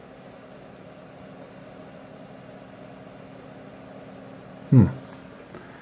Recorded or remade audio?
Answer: recorded